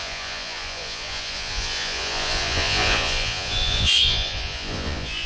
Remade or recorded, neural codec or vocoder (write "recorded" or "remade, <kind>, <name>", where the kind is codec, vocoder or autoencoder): remade, vocoder, Vocos